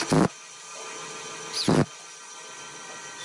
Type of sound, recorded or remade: recorded